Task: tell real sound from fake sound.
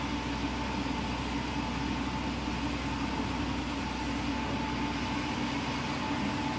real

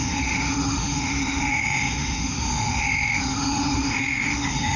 fake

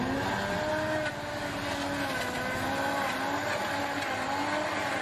real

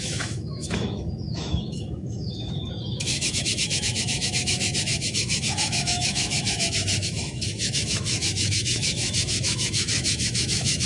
fake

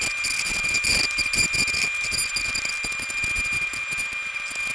real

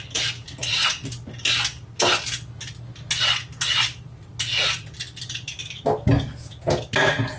real